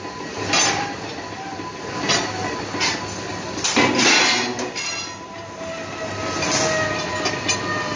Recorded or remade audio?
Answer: recorded